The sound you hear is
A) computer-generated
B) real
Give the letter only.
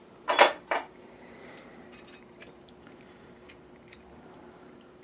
A